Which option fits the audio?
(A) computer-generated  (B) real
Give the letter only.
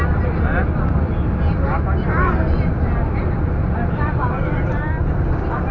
B